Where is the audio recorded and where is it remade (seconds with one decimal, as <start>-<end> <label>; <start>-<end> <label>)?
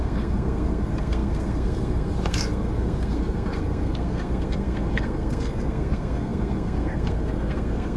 0.0-8.0 remade